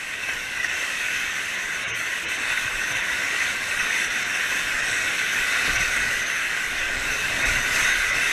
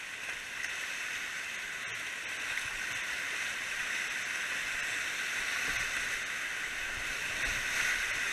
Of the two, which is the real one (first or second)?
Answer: second